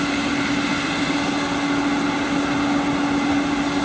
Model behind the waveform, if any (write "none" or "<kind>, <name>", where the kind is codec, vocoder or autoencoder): none